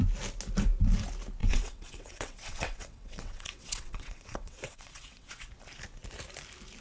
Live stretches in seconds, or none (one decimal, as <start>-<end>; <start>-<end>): 0.0-1.4; 5.5-6.8